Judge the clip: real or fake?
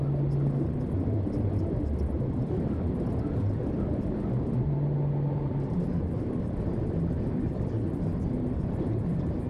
real